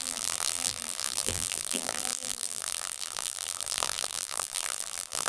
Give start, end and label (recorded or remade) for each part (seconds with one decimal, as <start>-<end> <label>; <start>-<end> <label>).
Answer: 0.0-5.3 remade